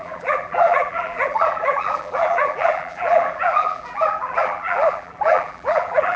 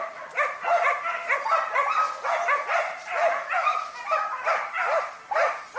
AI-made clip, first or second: first